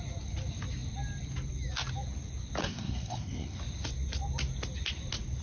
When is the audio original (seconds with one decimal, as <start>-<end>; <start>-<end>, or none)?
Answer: 0.0-2.6; 3.6-5.4